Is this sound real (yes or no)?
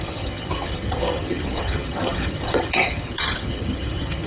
no